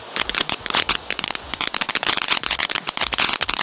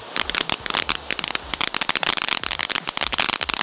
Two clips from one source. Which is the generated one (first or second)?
first